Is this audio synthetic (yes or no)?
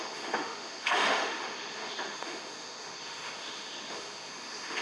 yes